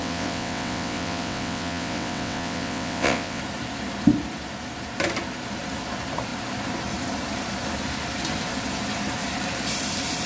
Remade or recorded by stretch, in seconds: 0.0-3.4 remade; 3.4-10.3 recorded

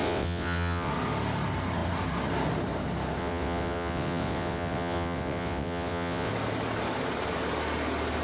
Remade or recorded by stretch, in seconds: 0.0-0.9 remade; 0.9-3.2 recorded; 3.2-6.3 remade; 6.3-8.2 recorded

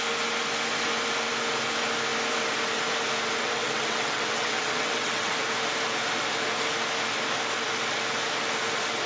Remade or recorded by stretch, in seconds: 0.0-3.4 recorded; 3.4-5.3 remade; 5.3-9.1 recorded

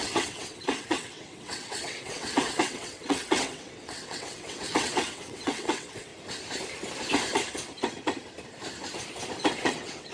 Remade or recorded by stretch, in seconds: 0.0-6.1 remade; 6.1-9.5 recorded; 9.5-10.1 remade